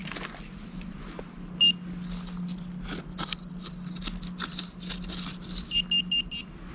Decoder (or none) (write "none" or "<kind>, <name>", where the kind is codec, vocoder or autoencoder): none